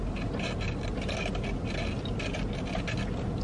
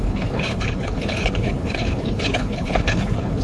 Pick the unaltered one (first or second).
first